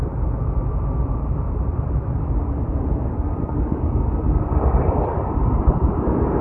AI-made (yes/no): no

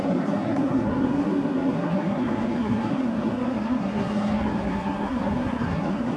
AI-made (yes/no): yes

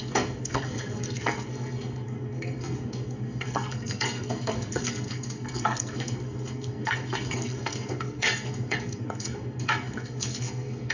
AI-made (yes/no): yes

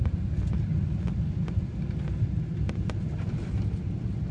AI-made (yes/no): no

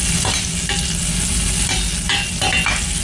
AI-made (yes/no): no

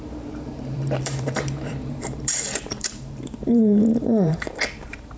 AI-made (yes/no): yes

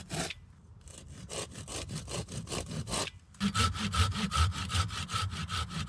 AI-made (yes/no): no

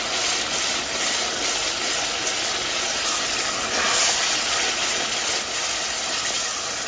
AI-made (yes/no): no